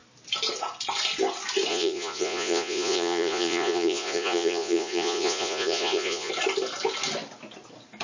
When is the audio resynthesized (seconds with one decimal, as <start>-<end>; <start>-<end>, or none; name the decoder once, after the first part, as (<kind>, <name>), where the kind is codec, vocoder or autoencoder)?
1.7-6.3 (vocoder, Vocos)